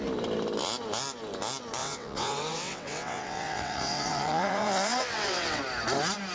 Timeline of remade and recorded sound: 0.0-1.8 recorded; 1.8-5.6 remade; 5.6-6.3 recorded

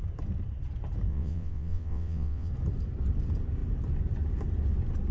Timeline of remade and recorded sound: 0.0-1.1 recorded; 1.1-2.5 remade; 2.5-5.1 recorded

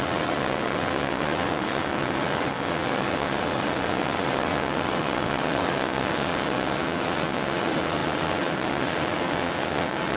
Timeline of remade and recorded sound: 0.0-10.2 remade

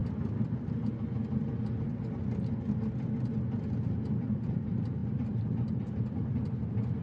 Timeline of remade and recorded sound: 0.0-7.0 recorded

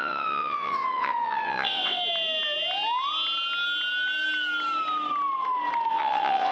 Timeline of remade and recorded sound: 0.0-2.0 remade; 2.0-5.9 recorded; 5.9-6.5 remade